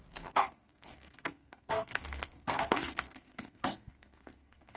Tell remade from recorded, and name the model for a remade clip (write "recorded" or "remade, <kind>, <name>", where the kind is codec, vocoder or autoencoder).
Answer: remade, codec, SNAC